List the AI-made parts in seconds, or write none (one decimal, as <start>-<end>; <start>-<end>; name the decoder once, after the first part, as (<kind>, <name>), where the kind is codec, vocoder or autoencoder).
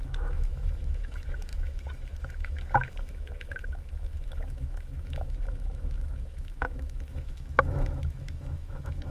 0.0-9.1 (autoencoder, DAC-VAE)